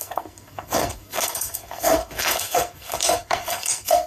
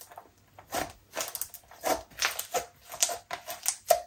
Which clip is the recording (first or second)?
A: second